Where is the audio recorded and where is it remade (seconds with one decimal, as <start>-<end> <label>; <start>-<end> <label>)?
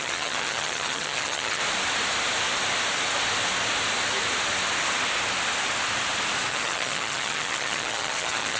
0.0-1.6 remade; 1.6-6.5 recorded; 6.5-8.6 remade